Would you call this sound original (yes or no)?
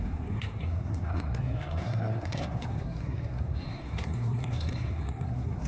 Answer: no